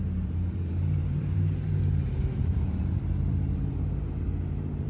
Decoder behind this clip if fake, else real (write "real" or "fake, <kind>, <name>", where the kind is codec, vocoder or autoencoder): fake, vocoder, BigVGAN v2